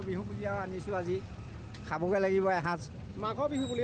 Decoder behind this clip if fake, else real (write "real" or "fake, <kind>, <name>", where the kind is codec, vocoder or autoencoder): real